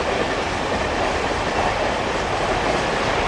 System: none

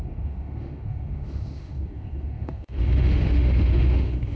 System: autoencoder, DAC-VAE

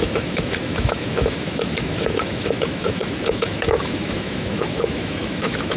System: autoencoder, DAC-VAE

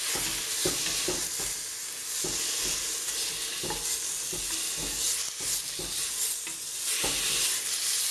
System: none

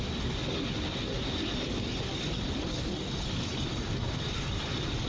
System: none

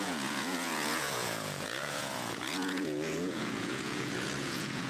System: vocoder, Vocos